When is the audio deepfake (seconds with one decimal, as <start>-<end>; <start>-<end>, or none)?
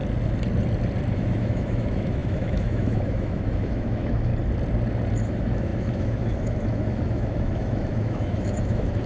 1.1-4.3; 5.2-9.1